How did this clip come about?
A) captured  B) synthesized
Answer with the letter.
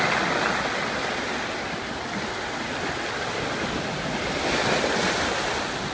A